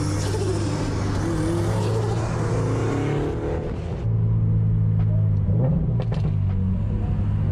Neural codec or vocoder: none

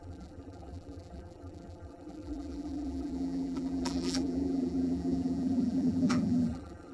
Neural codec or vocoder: vocoder, BigVGAN v2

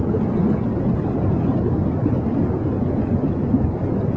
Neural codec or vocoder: none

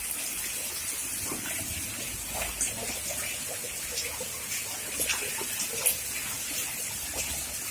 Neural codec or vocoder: none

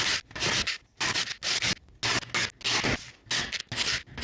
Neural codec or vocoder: none